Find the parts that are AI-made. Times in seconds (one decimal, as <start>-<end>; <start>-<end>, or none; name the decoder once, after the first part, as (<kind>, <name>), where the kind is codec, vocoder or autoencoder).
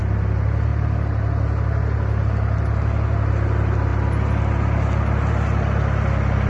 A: none